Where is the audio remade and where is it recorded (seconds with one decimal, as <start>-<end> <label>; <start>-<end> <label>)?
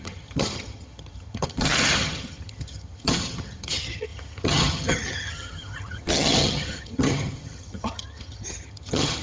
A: 0.0-9.2 remade